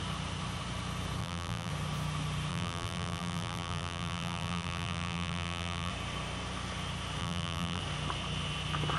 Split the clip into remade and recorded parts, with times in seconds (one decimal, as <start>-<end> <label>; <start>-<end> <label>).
0.0-1.2 recorded; 1.2-1.7 remade; 1.7-2.5 recorded; 2.5-5.9 remade; 5.9-7.2 recorded; 7.2-7.8 remade; 7.8-9.0 recorded